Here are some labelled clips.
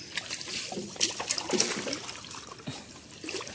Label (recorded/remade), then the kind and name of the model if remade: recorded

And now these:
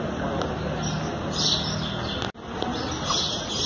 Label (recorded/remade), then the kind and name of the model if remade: recorded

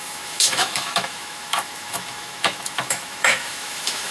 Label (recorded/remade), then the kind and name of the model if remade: remade, autoencoder, DAC-VAE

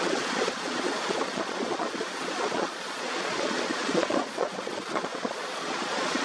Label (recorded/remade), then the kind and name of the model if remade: remade, vocoder, Vocos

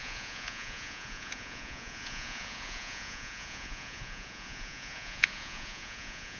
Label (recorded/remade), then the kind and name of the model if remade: remade, vocoder, Vocos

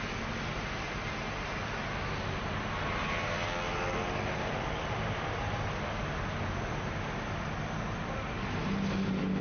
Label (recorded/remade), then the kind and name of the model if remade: recorded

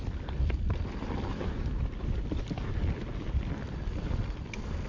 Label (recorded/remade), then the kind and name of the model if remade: recorded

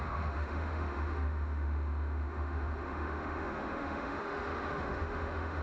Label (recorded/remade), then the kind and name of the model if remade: remade, autoencoder, DAC-VAE